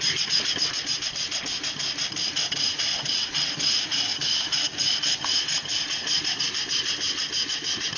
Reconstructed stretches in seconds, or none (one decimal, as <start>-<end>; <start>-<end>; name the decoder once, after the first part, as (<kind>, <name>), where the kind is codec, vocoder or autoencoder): 2.9-3.5 (vocoder, WaveNeXt)